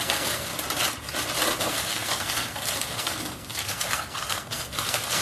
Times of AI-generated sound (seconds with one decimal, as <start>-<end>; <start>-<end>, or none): 0.0-0.5; 1.6-5.2